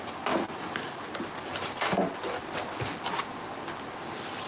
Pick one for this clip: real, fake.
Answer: real